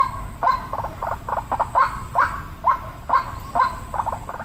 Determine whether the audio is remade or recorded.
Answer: remade